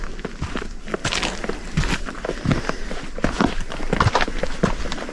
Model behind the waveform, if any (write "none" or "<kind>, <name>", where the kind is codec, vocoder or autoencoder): none